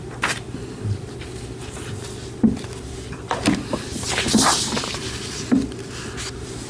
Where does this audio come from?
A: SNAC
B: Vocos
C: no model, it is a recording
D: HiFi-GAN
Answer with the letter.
C